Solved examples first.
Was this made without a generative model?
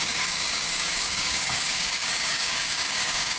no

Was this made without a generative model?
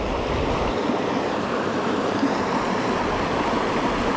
yes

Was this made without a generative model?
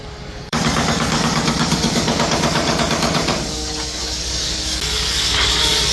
no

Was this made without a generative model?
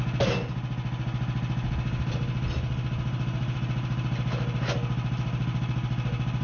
yes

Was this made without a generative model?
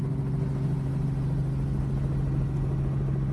yes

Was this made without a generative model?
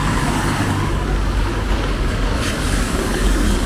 no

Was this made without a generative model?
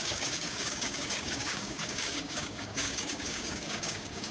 no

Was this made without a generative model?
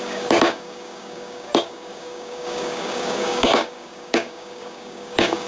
no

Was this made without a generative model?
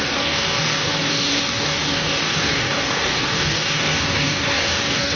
no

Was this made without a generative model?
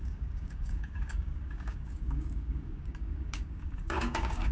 no